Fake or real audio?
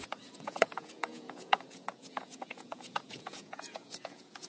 fake